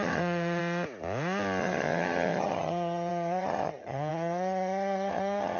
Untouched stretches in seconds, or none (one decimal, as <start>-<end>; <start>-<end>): 0.6-1.6